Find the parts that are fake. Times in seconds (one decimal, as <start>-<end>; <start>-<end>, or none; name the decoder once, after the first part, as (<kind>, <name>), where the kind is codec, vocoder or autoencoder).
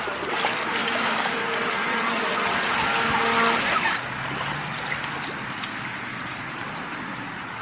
0.8-2.7 (vocoder, BigVGAN v2); 6.1-7.6